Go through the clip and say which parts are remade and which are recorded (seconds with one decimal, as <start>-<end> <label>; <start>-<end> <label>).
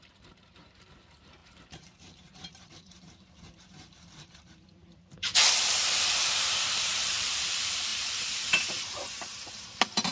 0.0-10.1 remade